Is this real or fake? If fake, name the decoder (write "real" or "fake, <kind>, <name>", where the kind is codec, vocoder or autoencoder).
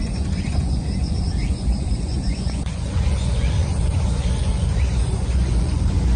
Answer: fake, vocoder, Vocos